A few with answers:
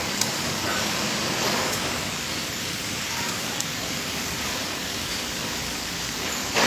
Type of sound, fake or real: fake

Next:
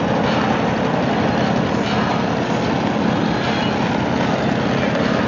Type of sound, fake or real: real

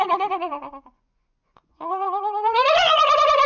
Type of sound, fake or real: fake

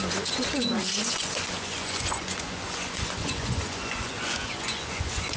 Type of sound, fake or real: fake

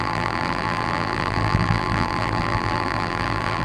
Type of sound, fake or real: fake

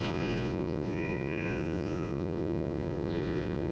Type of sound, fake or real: fake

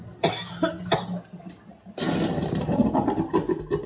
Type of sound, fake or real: real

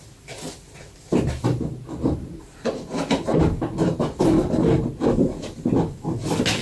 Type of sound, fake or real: real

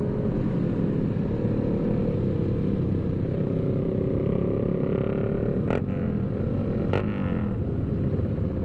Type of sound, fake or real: real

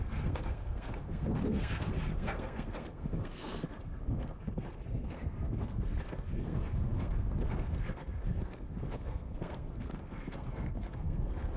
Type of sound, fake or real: fake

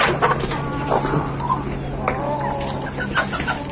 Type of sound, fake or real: real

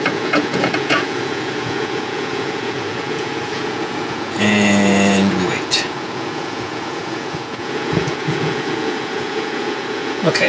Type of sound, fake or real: fake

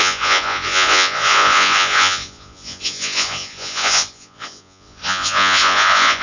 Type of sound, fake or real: fake